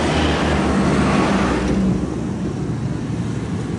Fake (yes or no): no